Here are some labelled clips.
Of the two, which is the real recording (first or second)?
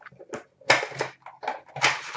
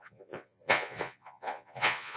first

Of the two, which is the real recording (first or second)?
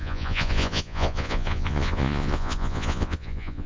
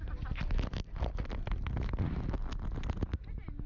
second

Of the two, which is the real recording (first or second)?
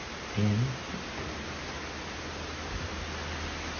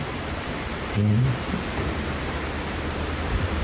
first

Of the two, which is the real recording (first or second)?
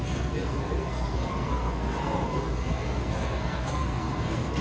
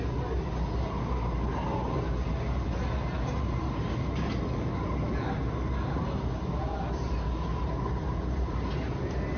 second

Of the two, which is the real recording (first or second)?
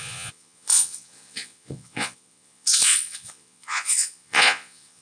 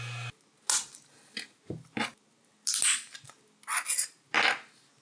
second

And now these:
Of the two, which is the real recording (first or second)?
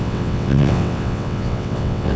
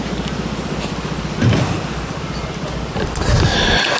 second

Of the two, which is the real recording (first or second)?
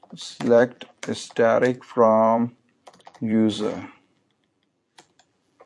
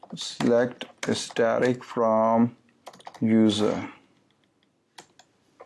second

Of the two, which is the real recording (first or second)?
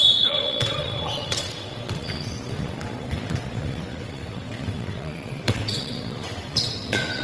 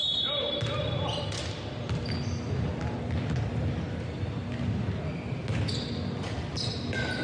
second